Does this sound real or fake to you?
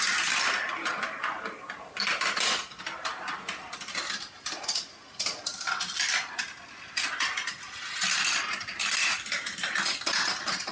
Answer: real